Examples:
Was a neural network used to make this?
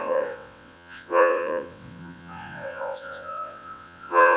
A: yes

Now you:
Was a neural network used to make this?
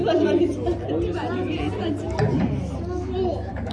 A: no